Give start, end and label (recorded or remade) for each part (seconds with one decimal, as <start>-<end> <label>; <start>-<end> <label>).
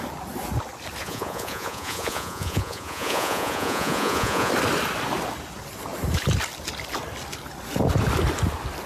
0.0-1.0 recorded; 1.0-4.5 remade; 4.5-8.9 recorded